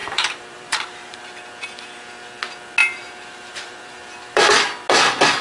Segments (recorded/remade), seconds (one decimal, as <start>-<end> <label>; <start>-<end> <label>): 0.0-1.2 remade; 1.2-2.8 recorded; 2.8-4.4 remade; 4.4-5.4 recorded